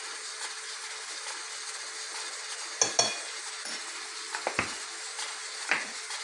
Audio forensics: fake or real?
real